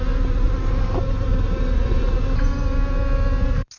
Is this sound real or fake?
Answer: real